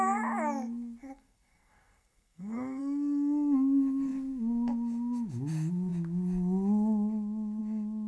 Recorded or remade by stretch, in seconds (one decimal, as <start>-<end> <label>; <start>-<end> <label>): 0.0-1.0 recorded; 1.0-2.8 remade; 2.8-8.1 recorded